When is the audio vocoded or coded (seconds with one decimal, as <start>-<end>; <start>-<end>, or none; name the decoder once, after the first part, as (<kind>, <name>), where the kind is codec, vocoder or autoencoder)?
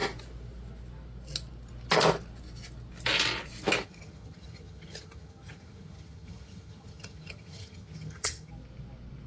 3.8-8.5 (vocoder, HiFi-GAN)